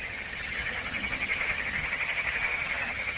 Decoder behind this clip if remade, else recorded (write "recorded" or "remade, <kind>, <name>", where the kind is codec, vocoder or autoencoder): remade, vocoder, HiFi-GAN